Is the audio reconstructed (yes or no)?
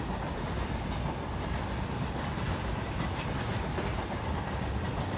no